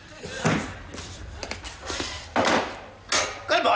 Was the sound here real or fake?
real